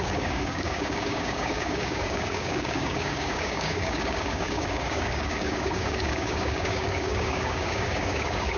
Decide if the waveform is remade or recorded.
remade